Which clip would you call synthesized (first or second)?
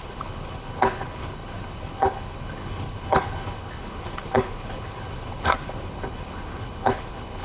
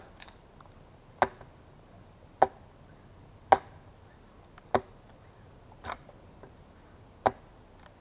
first